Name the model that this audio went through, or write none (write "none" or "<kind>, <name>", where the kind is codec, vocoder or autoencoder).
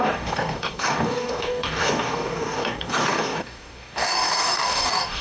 codec, DAC